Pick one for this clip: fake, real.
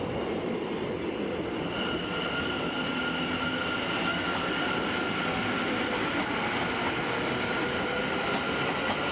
real